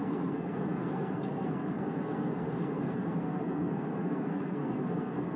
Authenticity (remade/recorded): remade